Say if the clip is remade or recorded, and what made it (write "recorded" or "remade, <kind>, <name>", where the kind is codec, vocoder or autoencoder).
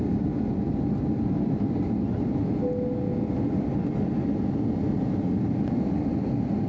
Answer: recorded